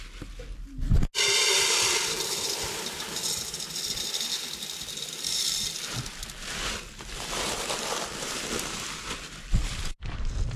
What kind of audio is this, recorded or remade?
recorded